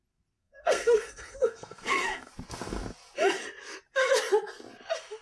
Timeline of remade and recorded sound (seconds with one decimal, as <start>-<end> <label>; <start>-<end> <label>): 0.0-0.4 recorded; 0.4-2.3 remade; 2.3-5.2 recorded